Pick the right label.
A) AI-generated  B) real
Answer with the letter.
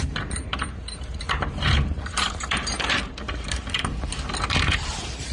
A